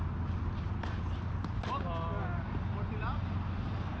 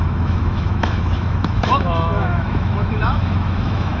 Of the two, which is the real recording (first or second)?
first